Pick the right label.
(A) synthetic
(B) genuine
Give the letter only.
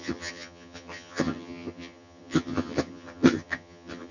A